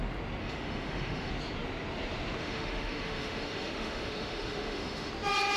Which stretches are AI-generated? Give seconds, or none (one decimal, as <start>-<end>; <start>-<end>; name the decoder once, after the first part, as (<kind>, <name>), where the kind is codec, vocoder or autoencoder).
0.4-1.3 (autoencoder, DAC-VAE); 2.4-5.1